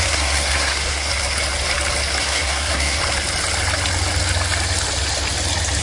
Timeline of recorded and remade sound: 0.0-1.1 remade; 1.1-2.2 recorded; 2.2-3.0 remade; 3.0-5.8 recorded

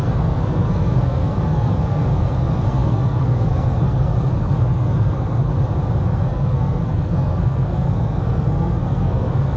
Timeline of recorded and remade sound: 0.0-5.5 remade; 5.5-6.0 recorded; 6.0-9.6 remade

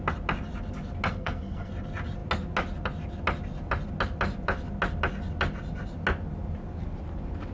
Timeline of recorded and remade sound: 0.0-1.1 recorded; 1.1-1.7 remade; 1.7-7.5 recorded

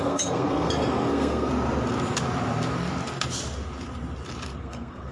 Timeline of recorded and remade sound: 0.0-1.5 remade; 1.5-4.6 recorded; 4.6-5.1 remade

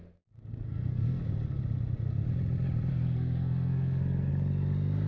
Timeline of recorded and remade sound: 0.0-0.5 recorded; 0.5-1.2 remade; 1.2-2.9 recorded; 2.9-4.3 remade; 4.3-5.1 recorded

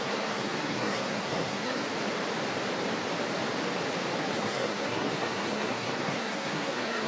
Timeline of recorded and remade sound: 0.0-1.8 remade; 1.8-4.2 recorded; 4.2-7.1 remade

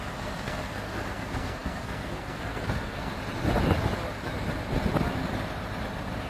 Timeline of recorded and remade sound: 0.0-3.1 remade; 3.1-6.3 recorded

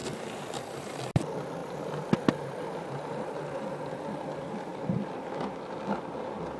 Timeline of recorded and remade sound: 0.0-6.6 recorded